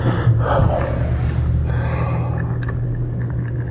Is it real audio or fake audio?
real